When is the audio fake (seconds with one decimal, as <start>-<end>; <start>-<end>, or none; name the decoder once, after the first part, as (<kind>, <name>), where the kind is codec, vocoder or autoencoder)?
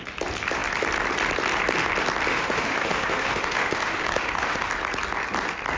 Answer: 2.3-4.7 (autoencoder, DAC-VAE)